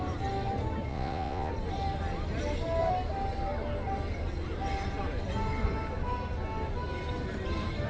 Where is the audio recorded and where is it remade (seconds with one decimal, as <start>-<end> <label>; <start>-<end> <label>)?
0.0-0.9 recorded; 0.9-1.5 remade; 1.5-7.9 recorded